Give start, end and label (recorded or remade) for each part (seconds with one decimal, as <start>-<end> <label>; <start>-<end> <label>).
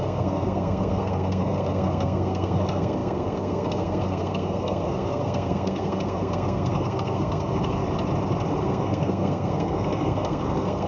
0.0-7.8 remade; 7.8-8.6 recorded; 8.6-10.9 remade